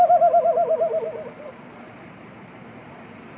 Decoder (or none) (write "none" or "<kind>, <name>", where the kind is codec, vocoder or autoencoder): none